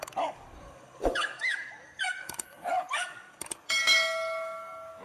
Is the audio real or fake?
fake